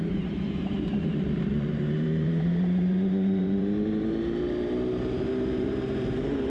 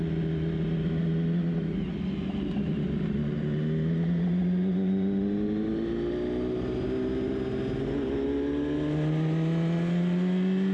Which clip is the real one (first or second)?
second